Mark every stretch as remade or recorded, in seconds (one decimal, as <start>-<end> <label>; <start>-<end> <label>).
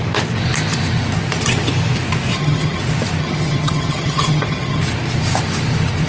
0.0-2.3 recorded; 2.3-2.8 remade; 2.8-3.2 recorded; 3.2-4.8 remade; 4.8-6.1 recorded